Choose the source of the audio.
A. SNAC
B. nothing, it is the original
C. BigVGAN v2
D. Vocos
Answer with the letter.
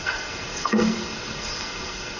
A